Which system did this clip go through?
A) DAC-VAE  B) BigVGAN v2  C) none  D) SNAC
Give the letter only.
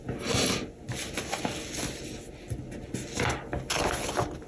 C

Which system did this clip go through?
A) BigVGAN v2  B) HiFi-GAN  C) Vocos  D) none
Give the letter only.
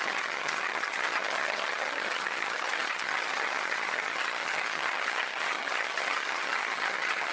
B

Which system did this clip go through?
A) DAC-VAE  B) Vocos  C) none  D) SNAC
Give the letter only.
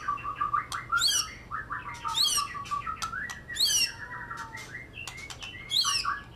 C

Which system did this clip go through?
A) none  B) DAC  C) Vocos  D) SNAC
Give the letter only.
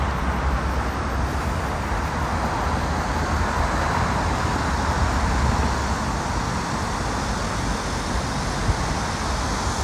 A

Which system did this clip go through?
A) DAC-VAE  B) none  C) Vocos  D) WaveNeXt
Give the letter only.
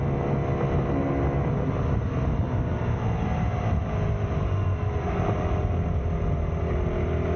B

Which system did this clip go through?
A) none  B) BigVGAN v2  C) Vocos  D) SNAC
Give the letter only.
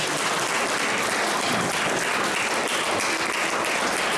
A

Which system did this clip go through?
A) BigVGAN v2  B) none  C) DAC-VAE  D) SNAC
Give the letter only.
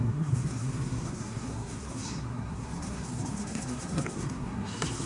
D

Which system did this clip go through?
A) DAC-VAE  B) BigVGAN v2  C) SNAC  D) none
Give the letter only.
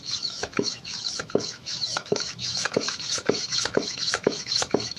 A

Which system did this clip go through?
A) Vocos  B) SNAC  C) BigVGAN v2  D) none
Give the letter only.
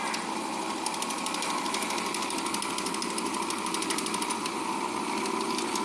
D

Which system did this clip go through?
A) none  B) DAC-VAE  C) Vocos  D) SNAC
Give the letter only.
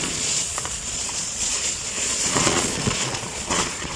C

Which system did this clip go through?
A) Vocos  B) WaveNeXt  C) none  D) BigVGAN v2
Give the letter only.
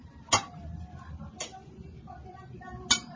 C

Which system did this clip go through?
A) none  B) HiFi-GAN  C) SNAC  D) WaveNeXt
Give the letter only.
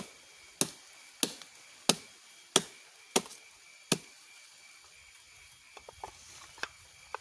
A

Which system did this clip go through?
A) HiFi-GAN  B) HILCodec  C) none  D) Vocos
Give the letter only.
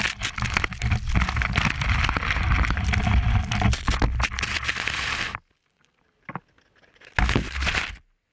C